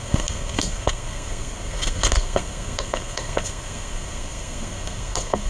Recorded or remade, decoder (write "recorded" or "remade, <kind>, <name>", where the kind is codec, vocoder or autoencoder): remade, codec, SNAC